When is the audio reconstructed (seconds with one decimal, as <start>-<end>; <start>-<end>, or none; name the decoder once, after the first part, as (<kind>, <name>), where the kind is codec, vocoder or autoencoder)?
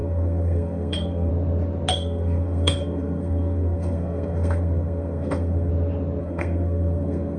0.0-1.3 (codec, SNAC); 1.9-5.7; 6.2-7.4